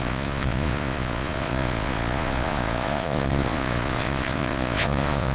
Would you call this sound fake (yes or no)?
yes